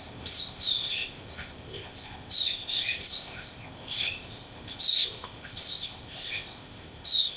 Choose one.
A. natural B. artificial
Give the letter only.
B